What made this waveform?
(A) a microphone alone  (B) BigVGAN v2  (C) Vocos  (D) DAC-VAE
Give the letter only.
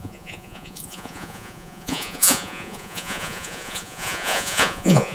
C